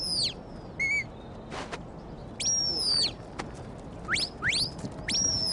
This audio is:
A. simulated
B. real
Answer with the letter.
B